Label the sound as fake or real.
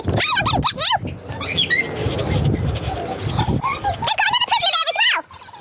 real